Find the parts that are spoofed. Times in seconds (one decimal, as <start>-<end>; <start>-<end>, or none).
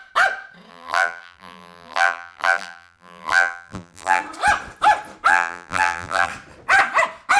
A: 0.7-4.2; 5.3-6.3